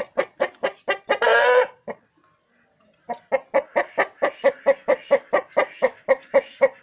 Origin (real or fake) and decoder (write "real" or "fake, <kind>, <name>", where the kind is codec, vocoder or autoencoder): real